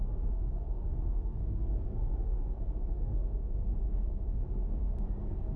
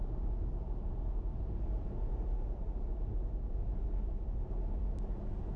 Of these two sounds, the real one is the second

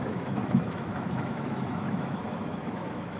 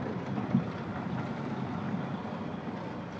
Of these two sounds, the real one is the second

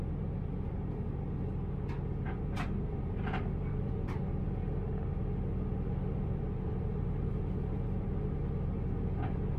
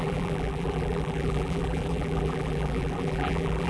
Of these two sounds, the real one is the first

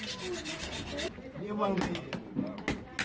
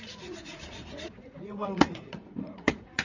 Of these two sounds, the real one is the first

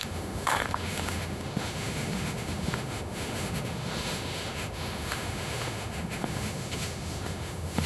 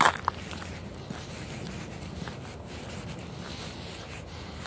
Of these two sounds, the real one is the second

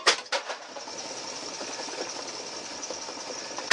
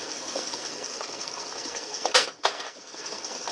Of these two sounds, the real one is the first